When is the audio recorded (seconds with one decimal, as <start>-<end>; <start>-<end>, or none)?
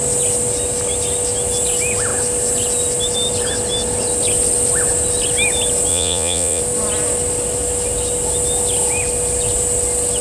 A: 0.0-5.9; 6.6-10.2